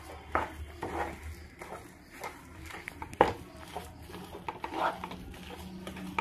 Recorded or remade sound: recorded